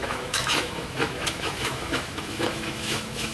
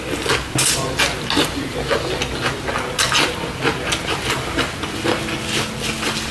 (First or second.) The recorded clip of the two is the second